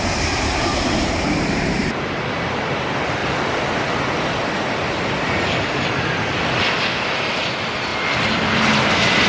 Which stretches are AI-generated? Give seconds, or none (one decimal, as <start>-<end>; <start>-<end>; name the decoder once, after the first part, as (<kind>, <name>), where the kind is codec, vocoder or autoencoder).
3.2-3.9 (vocoder, BigVGAN v2); 7.9-8.7